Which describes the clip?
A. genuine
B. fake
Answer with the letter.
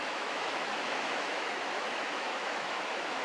B